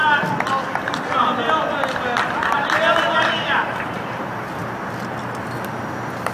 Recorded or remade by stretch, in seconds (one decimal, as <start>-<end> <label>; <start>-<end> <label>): 0.0-4.6 remade; 4.6-5.2 recorded; 5.2-6.3 remade